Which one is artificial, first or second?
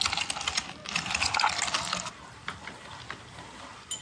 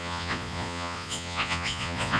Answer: second